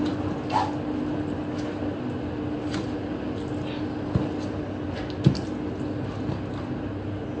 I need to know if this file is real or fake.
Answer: real